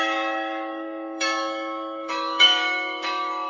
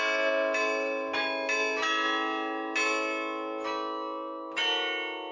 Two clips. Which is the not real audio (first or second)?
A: first